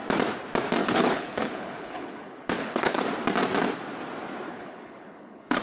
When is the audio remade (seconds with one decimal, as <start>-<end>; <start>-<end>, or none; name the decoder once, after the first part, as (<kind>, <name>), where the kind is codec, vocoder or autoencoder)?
0.8-3.0 (codec, HILCodec); 4.5-5.6